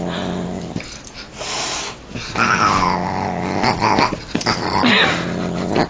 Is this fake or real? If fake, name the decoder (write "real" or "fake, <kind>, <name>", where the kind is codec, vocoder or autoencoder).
real